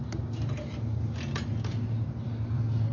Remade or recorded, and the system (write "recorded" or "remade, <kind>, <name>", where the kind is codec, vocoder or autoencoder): recorded